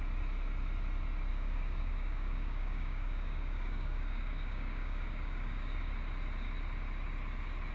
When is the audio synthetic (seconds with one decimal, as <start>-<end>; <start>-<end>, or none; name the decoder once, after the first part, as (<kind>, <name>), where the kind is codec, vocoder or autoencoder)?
1.3-5.9 (codec, DAC)